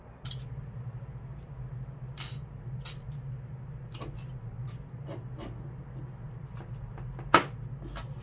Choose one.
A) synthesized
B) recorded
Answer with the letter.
B